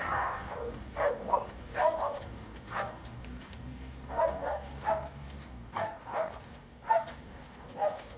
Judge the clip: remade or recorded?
remade